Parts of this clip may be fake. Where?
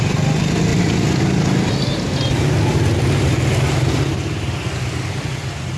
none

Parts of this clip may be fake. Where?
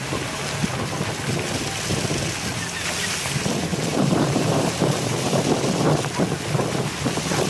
3.9-5.4 (vocoder, BigVGAN v2)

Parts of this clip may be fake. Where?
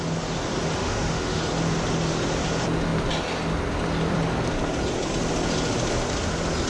0.8-1.4 (autoencoder, DAC-VAE)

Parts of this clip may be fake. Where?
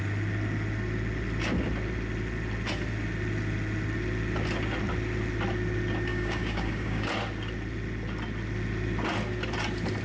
6.1-7.1 (codec, DAC)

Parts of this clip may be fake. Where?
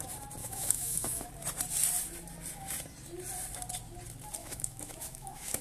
0.4-1.3 (autoencoder, DAC-VAE); 4.4-5.6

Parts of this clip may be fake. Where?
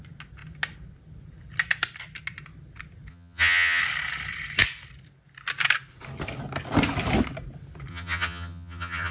3.1-3.8 (vocoder, HiFi-GAN); 7.9-9.1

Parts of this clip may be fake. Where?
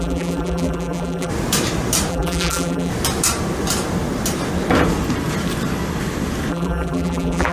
0.0-1.3 (vocoder, BigVGAN v2); 2.1-2.9; 6.5-7.5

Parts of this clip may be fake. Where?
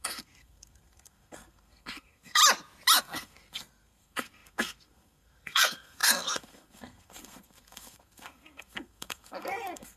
0.0-2.4 (codec, SNAC); 3.0-10.0